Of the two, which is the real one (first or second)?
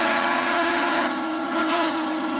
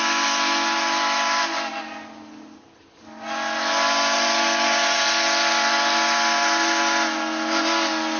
second